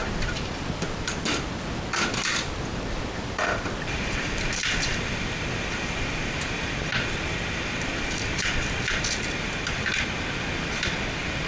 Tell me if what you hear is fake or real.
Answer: fake